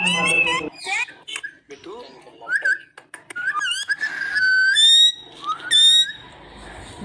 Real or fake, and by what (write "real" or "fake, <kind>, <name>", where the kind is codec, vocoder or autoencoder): real